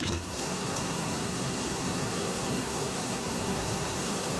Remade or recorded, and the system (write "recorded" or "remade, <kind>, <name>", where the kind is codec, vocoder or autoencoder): remade, codec, SNAC